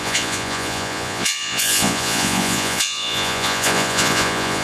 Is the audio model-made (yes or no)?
yes